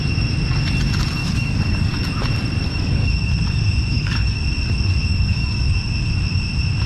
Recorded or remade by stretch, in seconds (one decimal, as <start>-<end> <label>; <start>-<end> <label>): 0.0-1.2 recorded; 1.2-2.0 remade; 2.0-2.7 recorded; 2.7-3.3 remade; 3.3-3.9 recorded; 3.9-4.4 remade; 4.4-5.1 recorded; 5.1-5.7 remade; 5.7-6.9 recorded